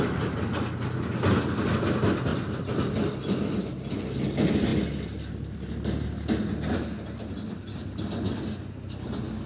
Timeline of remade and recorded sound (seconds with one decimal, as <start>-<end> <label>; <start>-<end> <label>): 0.0-9.5 recorded